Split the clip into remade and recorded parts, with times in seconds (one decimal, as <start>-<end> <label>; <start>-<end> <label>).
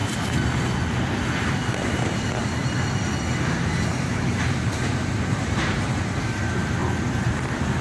0.0-1.4 recorded; 1.4-2.6 remade; 2.6-3.5 recorded; 3.5-6.8 remade; 6.8-7.8 recorded